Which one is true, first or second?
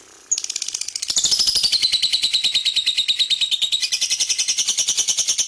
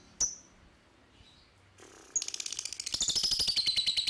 second